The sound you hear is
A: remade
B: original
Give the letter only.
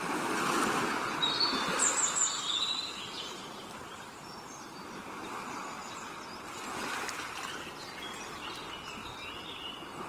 B